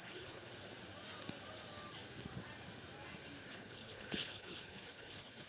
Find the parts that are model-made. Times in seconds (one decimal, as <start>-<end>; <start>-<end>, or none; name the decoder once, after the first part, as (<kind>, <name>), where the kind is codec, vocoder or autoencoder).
0.0-0.5 (codec, HILCodec); 3.5-5.5